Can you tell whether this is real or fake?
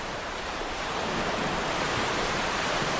fake